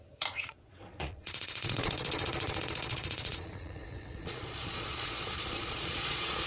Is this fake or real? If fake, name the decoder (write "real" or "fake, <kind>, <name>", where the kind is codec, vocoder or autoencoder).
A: fake, vocoder, Vocos